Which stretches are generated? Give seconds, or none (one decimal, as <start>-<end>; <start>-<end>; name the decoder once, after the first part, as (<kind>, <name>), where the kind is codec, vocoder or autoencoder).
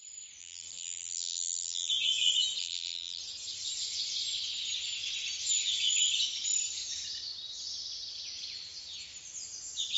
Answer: 0.4-1.9 (vocoder, BigVGAN v2); 2.6-3.2